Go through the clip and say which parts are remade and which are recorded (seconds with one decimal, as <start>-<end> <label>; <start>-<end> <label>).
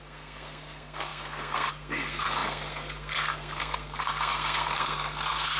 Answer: 0.0-5.6 remade